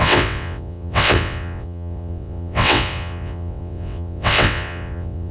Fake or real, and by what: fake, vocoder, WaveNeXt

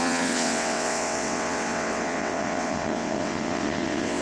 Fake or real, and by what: fake, vocoder, WaveNeXt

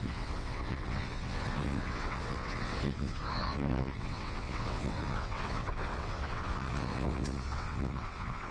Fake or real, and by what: fake, vocoder, WaveNeXt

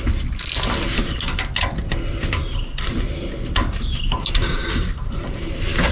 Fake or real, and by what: real